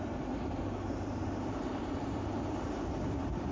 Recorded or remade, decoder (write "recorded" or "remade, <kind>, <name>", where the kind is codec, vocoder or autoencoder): remade, vocoder, BigVGAN v2